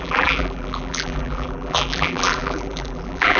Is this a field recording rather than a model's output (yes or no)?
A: no